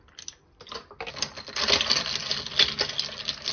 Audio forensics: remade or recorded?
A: recorded